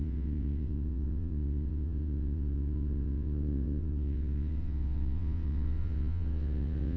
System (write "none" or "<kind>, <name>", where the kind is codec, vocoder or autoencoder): vocoder, WaveNeXt